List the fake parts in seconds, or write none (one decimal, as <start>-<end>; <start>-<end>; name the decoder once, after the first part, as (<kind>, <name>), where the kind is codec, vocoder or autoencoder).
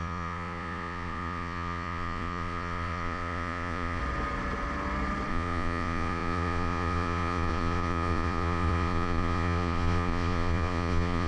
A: 0.0-4.0 (vocoder, Vocos); 5.3-11.3